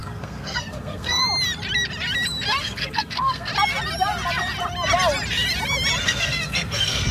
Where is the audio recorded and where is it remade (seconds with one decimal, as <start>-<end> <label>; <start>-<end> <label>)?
0.0-1.2 remade; 1.2-2.6 recorded; 2.6-3.5 remade; 3.5-6.0 recorded; 6.0-7.1 remade